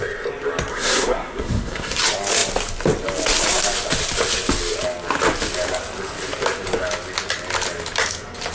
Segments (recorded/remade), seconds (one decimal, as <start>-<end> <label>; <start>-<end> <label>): 0.0-0.7 recorded; 0.7-2.0 remade; 2.0-8.5 recorded